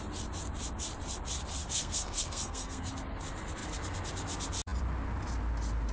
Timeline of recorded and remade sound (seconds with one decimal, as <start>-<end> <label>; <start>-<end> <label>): 0.0-1.6 recorded; 1.6-2.9 remade; 2.9-5.9 recorded